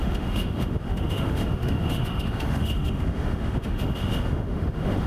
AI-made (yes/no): yes